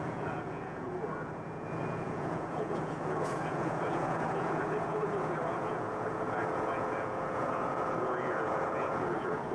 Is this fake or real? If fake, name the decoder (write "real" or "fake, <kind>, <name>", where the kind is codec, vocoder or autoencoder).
fake, vocoder, Vocos